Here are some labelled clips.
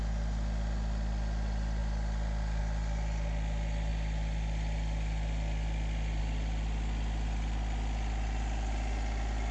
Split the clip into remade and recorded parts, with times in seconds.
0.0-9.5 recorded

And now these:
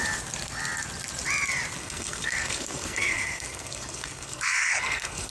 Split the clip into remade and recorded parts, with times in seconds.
0.0-1.8 recorded; 1.8-5.3 remade

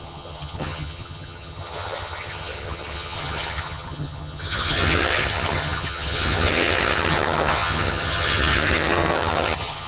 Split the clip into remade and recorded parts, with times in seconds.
0.0-9.9 remade

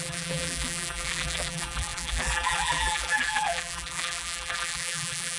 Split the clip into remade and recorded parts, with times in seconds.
0.0-5.4 remade

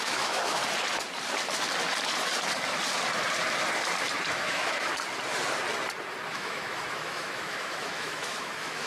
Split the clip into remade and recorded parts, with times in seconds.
0.0-0.6 remade; 0.6-4.3 recorded; 4.3-4.9 remade; 4.9-6.3 recorded; 6.3-8.9 remade